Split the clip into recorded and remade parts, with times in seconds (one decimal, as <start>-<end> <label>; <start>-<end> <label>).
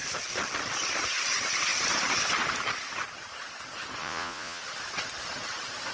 0.0-4.0 recorded; 4.0-4.6 remade; 4.6-5.9 recorded